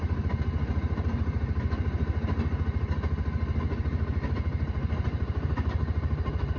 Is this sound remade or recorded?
recorded